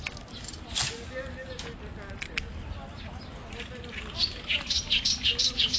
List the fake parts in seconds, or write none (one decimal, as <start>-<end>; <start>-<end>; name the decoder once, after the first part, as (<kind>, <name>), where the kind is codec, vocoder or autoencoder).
none